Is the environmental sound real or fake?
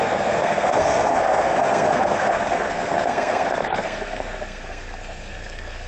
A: fake